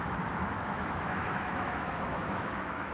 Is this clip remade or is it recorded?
remade